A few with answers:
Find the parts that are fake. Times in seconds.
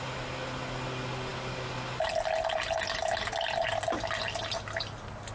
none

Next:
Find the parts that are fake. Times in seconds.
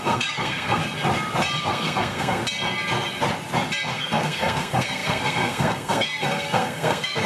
0.0-0.8 (codec, SNAC); 1.6-2.4; 3.9-7.3